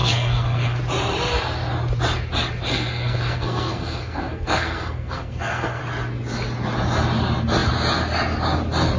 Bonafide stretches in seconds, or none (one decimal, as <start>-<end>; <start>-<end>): 0.8-2.7; 5.8-9.0

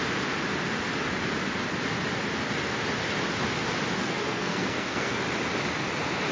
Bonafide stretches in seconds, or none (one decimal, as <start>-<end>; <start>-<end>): 0.0-4.0; 5.2-6.3